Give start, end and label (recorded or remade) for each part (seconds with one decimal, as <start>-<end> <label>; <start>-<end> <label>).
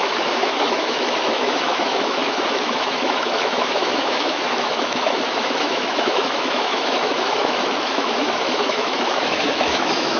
0.0-10.2 remade